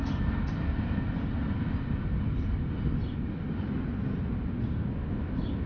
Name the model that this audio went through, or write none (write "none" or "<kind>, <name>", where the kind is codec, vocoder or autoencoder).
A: none